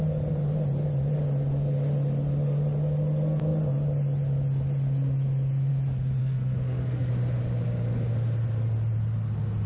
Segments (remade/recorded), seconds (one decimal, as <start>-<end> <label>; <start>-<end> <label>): 0.0-6.2 recorded; 6.2-7.1 remade; 7.1-9.7 recorded